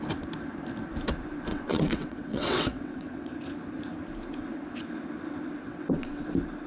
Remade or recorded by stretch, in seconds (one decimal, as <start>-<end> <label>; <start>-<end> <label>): 0.0-1.5 recorded; 1.5-3.3 remade; 3.3-5.7 recorded; 5.7-6.2 remade; 6.2-6.7 recorded